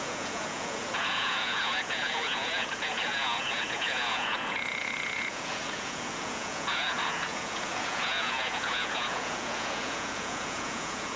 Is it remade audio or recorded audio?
remade